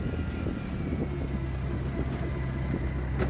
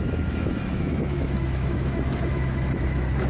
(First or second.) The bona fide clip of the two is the first